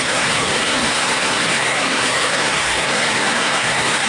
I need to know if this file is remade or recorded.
remade